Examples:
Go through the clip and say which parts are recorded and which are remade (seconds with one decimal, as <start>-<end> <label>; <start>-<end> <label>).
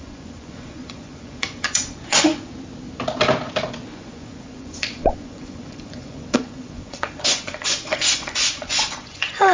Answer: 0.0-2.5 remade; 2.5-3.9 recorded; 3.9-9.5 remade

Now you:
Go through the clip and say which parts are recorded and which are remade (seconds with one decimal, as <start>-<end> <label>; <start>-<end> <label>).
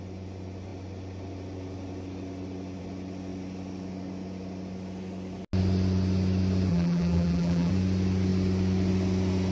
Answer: 0.0-6.7 recorded; 6.7-7.7 remade; 7.7-9.5 recorded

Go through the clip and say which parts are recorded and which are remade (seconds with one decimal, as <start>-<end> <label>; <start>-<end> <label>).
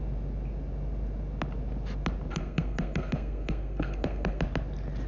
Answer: 0.0-2.3 recorded; 2.3-4.4 remade; 4.4-5.1 recorded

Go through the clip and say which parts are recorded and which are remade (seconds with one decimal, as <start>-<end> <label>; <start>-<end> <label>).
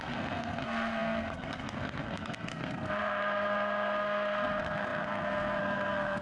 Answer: 0.0-6.2 remade